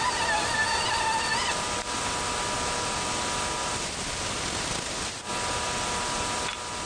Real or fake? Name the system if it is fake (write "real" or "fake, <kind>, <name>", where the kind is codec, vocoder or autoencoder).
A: real